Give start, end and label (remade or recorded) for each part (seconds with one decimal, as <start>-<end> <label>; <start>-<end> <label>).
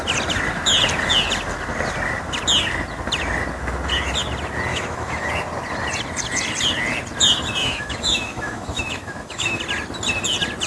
0.0-4.7 recorded; 4.7-5.3 remade; 5.3-7.6 recorded; 7.6-9.6 remade; 9.6-10.7 recorded